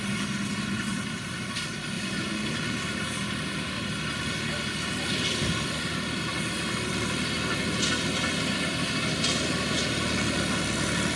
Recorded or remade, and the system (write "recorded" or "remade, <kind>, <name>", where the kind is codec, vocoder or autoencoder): recorded